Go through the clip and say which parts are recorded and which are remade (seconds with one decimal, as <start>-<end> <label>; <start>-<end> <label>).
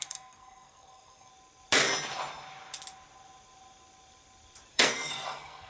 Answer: 0.0-1.3 remade; 1.3-4.7 recorded; 4.7-5.7 remade